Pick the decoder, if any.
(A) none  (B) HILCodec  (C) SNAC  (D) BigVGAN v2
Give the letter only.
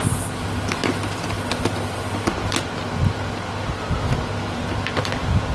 A